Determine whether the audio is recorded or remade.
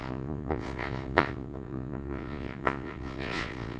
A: remade